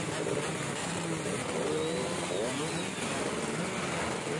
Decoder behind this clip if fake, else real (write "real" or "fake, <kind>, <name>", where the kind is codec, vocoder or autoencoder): real